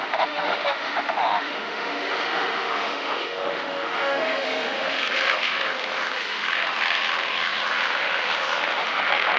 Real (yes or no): no